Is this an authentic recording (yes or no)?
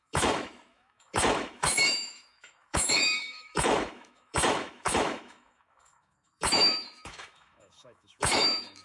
no